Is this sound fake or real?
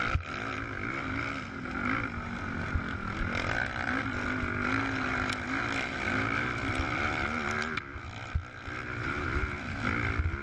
real